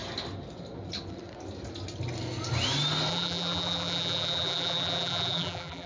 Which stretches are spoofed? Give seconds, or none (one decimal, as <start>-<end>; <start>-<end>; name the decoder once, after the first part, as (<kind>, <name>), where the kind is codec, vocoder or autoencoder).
3.1-5.9 (vocoder, BigVGAN v2)